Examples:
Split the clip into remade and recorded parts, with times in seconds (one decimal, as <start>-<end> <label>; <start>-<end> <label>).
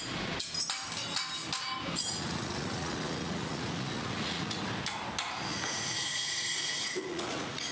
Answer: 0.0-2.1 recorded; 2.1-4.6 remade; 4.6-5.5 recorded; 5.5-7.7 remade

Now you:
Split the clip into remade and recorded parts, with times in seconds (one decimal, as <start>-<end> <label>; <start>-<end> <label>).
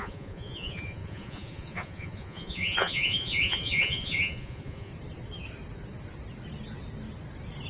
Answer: 0.0-4.9 remade; 4.9-7.7 recorded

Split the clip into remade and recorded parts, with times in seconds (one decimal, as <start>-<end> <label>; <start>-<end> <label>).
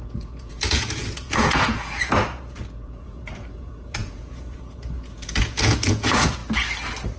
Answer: 0.0-6.4 remade; 6.4-7.2 recorded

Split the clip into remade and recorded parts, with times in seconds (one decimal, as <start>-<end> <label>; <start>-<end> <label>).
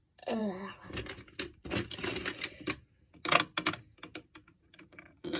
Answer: 0.0-4.5 recorded; 4.5-5.4 remade